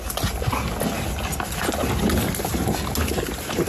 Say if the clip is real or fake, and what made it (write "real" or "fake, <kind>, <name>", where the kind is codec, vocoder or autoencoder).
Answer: real